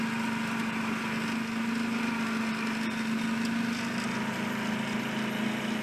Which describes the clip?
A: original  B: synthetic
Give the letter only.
A